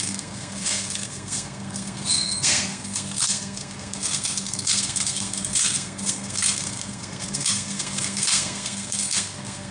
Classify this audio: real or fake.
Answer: fake